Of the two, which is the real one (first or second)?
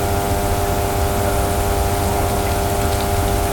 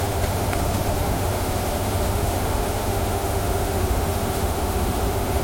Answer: first